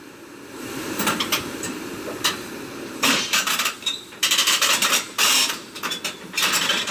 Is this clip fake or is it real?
fake